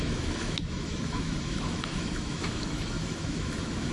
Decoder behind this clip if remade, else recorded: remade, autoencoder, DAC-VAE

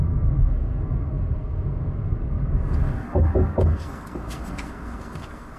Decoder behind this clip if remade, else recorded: remade, codec, SNAC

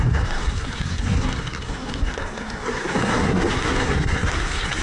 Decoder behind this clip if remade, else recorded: remade, codec, SNAC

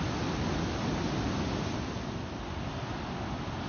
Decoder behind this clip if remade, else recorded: recorded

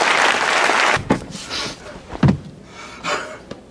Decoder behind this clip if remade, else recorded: recorded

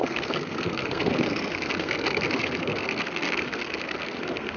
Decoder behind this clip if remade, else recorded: remade, codec, SNAC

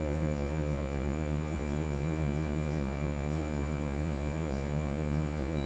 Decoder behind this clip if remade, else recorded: remade, vocoder, Vocos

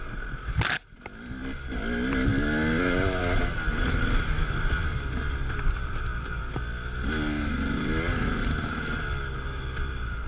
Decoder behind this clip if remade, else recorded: recorded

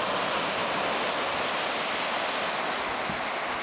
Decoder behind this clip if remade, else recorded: recorded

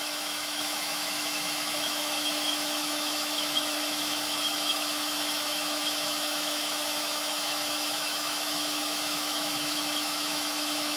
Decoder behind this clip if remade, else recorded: remade, autoencoder, DAC-VAE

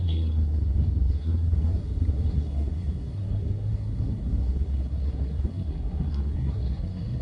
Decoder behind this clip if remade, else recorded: remade, codec, SNAC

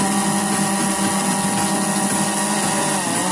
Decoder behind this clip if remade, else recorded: recorded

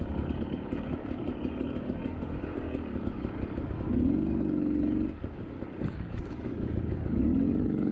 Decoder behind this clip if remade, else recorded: remade, codec, DAC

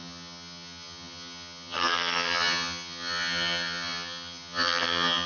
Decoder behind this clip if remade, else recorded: remade, vocoder, HiFi-GAN